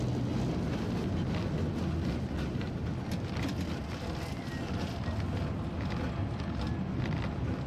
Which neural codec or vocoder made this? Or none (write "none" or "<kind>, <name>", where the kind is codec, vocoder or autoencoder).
none